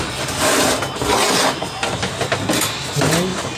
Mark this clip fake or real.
real